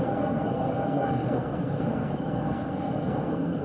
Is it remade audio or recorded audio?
remade